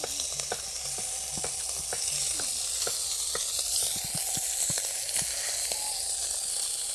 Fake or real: real